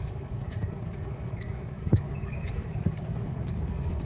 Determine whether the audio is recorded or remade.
remade